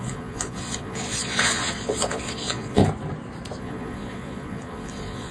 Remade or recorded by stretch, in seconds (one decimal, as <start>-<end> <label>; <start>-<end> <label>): 0.0-2.8 remade; 2.8-3.6 recorded; 3.6-5.3 remade